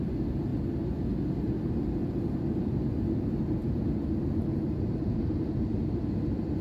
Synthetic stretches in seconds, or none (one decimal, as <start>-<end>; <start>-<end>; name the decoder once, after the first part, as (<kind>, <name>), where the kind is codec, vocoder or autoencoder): 3.6-6.0 (vocoder, BigVGAN v2)